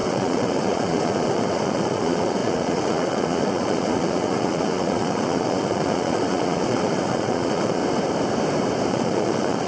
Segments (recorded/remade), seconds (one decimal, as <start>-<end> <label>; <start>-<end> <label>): 0.0-7.8 remade; 7.8-8.9 recorded; 8.9-9.7 remade